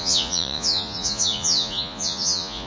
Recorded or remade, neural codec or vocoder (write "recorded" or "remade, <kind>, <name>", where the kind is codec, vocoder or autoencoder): remade, vocoder, Vocos